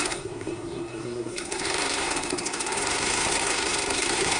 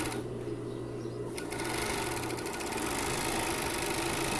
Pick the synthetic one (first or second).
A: first